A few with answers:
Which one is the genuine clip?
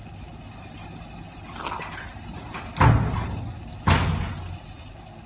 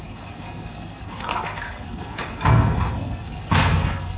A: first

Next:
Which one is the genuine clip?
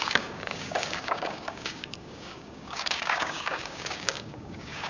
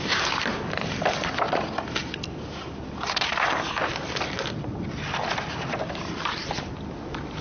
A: second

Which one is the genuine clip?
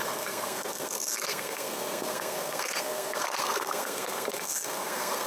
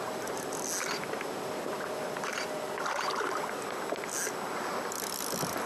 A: second